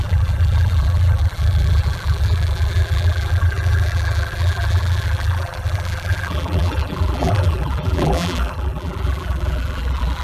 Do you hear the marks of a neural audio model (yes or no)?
yes